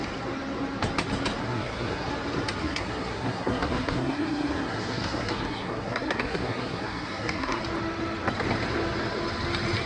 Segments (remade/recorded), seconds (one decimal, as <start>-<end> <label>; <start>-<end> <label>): 0.0-1.4 recorded; 1.4-2.1 remade; 2.1-2.6 recorded; 2.6-7.6 remade; 7.6-9.9 recorded